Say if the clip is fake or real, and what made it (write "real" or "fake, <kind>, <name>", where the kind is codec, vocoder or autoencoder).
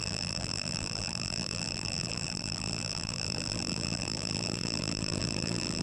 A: fake, vocoder, BigVGAN v2